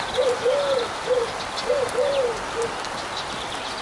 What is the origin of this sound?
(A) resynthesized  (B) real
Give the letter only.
A